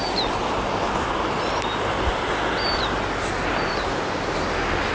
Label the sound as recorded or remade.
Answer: recorded